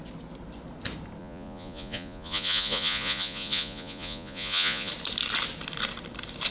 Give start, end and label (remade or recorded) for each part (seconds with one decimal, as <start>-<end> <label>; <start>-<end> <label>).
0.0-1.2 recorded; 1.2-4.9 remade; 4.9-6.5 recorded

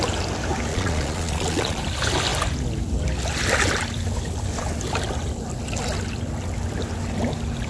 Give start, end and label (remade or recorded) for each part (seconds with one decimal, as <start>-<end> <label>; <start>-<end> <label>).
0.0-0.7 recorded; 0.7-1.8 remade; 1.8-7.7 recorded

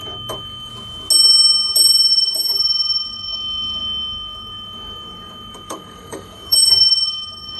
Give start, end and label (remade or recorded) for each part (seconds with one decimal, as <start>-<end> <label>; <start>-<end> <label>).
0.0-0.7 remade; 0.7-2.1 recorded; 2.1-7.6 remade